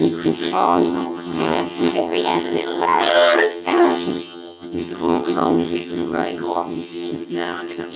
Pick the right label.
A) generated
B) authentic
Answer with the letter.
A